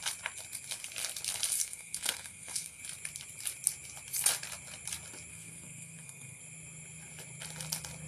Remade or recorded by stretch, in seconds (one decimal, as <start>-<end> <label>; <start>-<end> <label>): 0.0-1.6 recorded; 1.6-2.8 remade; 2.8-5.3 recorded; 5.3-6.4 remade; 6.4-8.1 recorded